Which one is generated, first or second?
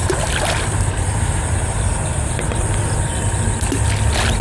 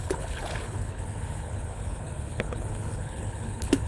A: second